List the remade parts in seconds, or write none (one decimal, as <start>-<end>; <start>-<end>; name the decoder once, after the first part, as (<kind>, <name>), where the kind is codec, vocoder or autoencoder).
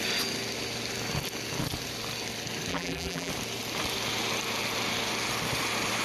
2.7-3.3 (vocoder, BigVGAN v2)